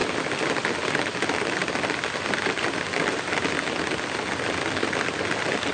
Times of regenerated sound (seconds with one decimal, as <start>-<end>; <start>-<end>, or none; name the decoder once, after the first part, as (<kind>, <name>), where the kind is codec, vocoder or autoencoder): none